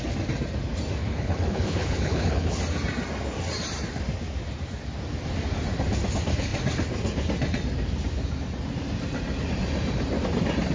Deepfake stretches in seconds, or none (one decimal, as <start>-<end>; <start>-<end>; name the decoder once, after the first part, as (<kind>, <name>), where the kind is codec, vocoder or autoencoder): 1.0-2.6 (codec, HILCodec)